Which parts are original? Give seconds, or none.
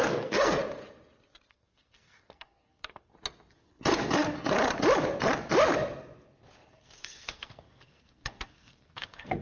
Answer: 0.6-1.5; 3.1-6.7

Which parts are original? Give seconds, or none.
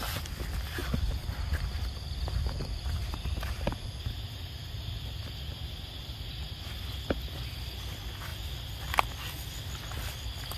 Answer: 0.0-10.6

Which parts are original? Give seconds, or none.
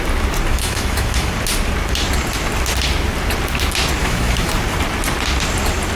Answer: 0.0-0.5; 1.3-4.0; 4.5-5.9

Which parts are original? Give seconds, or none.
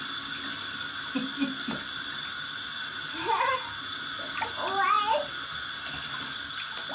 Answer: 0.0-6.9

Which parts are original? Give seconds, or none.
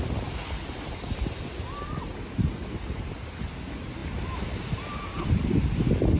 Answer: 0.0-6.2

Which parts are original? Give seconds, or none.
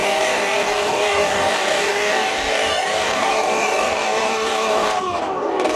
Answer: none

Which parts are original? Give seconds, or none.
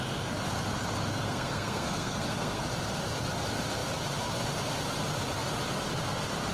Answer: 0.0-1.1; 2.6-6.5